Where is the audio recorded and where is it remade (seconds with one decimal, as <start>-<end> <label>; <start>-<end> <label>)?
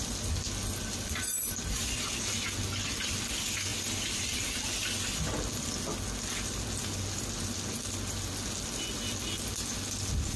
0.0-10.4 recorded